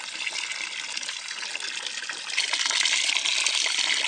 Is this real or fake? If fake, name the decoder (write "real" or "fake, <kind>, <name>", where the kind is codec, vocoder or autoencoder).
real